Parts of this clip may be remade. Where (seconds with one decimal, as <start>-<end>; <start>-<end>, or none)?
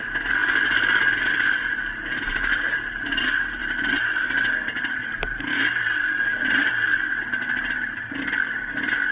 none